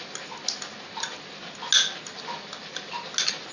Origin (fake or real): real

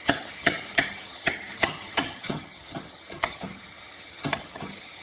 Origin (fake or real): fake